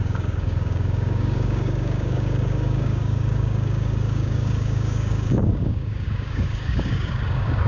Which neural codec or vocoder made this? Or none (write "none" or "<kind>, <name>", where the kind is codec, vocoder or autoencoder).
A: codec, DAC